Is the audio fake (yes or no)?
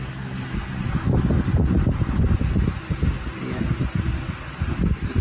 no